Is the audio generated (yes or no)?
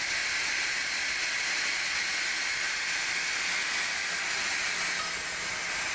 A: no